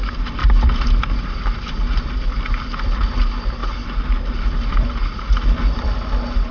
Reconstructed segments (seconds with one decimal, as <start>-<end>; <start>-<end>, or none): none